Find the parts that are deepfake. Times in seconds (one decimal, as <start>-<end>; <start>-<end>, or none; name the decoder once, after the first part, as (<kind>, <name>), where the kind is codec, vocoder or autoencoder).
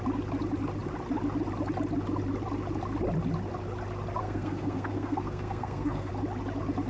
4.2-6.1 (codec, SNAC)